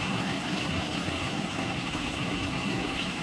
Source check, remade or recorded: remade